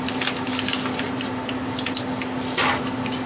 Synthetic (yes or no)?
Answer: no